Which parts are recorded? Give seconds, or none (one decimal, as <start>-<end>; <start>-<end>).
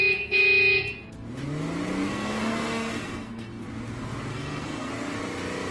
0.0-2.1; 3.6-4.3; 4.9-5.7